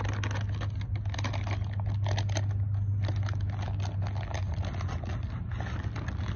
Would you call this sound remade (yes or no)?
no